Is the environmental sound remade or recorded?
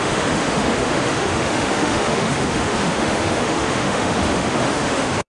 remade